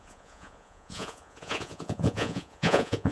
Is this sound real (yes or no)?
no